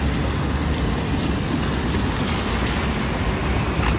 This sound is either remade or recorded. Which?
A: recorded